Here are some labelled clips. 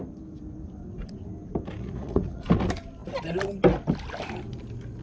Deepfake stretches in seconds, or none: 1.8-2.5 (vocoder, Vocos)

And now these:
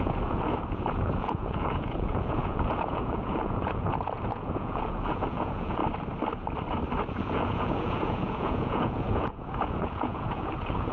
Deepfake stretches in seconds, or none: 0.0-5.8 (vocoder, Vocos); 7.1-10.9